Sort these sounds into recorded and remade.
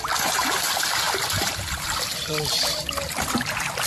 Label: recorded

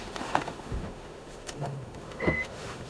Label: remade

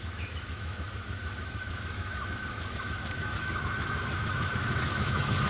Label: remade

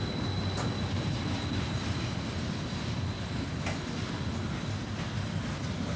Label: recorded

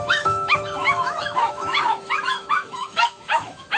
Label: remade